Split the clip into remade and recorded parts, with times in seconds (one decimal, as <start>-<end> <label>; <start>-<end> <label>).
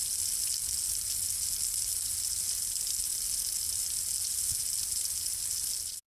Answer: 0.0-6.1 recorded